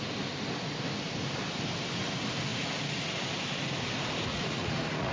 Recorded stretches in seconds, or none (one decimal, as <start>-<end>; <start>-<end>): 0.0-4.3